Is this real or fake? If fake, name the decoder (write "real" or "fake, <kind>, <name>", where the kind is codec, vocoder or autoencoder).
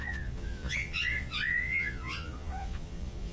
fake, vocoder, Vocos